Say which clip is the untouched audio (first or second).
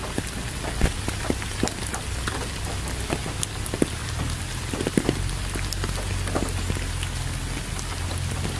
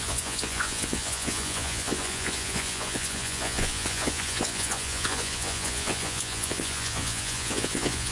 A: first